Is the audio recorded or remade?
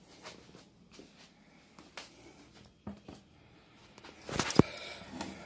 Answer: recorded